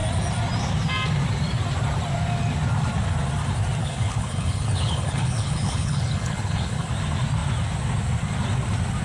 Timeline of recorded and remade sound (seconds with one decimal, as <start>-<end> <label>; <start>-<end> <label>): 0.0-3.8 recorded; 3.8-6.9 remade; 6.9-9.0 recorded